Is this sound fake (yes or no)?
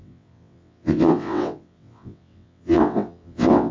yes